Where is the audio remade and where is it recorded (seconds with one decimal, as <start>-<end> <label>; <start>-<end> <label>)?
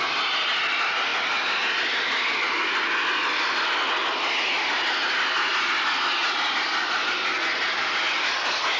0.0-8.8 recorded